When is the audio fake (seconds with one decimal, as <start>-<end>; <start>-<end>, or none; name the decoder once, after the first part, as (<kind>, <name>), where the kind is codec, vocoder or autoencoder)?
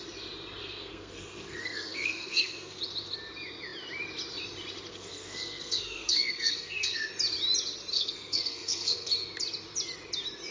0.6-2.8 (codec, SNAC); 4.9-7.1; 7.9-9.1